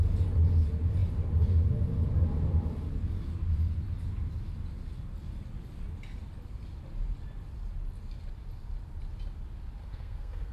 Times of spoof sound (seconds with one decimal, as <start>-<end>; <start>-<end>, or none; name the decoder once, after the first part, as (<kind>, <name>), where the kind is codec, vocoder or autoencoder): 9.8-10.5 (codec, SNAC)